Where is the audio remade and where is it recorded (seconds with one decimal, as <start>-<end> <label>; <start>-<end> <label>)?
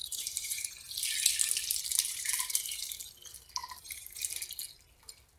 0.0-0.6 remade; 0.6-1.9 recorded; 1.9-3.0 remade; 3.0-3.6 recorded; 3.6-4.4 remade; 4.4-5.4 recorded